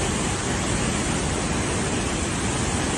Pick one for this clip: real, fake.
real